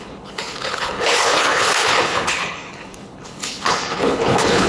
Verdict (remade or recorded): remade